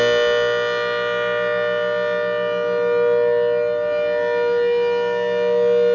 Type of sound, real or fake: real